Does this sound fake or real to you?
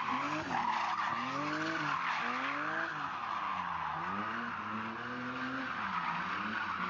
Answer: real